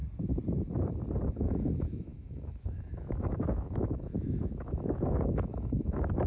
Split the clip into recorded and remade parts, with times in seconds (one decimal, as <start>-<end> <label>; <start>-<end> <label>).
0.0-1.3 recorded; 1.3-6.3 remade